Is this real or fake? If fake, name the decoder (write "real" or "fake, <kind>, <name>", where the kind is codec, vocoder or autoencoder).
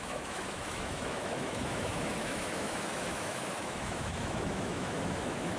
fake, autoencoder, DAC-VAE